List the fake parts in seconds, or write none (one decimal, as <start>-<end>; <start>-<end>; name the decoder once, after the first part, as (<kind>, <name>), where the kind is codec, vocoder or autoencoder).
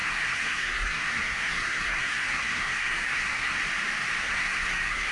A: 0.0-3.6 (codec, SNAC); 4.2-5.1